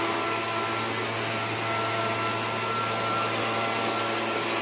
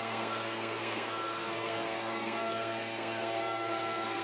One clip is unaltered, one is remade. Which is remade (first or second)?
second